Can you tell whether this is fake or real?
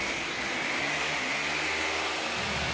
real